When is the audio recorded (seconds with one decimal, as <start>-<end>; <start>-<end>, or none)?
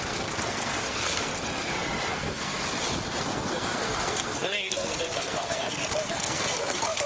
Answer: 1.3-2.1; 2.5-3.2